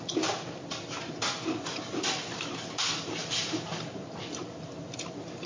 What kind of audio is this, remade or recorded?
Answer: recorded